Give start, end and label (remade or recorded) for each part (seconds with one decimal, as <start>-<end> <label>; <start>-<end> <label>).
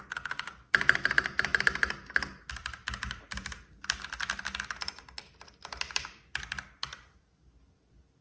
0.0-8.2 recorded